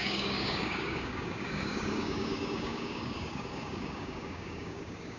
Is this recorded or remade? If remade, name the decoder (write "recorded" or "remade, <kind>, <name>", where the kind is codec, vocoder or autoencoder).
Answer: remade, codec, DAC